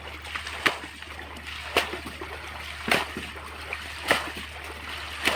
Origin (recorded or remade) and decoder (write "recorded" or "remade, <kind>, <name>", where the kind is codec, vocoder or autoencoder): recorded